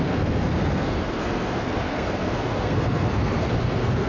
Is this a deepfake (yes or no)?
yes